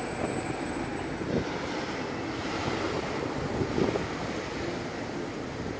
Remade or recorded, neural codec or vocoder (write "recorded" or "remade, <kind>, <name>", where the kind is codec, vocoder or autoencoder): recorded